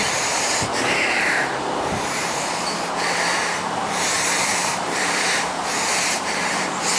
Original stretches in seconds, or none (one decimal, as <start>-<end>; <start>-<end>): 0.0-0.7; 2.5-4.6